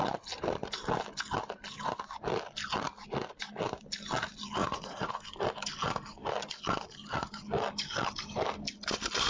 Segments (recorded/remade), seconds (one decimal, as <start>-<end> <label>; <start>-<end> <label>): 0.0-4.6 recorded; 4.6-5.2 remade; 5.2-9.3 recorded